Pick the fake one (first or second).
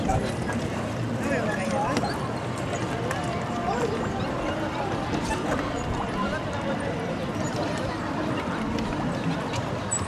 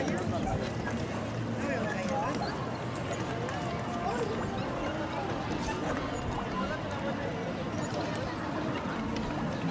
first